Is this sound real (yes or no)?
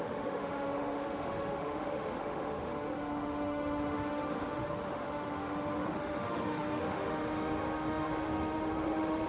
no